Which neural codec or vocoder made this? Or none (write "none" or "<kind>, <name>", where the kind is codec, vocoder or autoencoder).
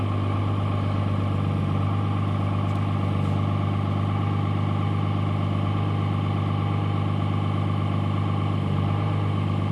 none